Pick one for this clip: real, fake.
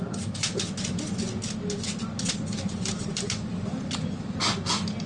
real